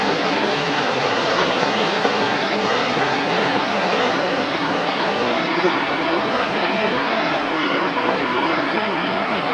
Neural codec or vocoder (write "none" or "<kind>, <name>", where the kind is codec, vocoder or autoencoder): codec, SNAC